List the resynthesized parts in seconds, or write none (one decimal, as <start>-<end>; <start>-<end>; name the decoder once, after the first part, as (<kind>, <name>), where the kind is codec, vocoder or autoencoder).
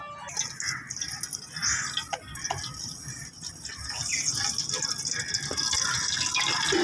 none